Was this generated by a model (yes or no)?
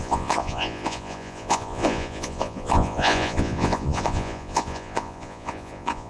yes